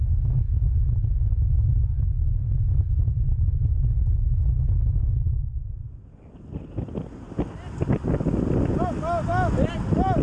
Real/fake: real